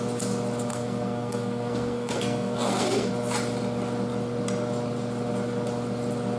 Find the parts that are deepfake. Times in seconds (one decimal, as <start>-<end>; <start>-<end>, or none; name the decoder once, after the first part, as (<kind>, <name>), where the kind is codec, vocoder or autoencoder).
0.7-3.1 (codec, SNAC)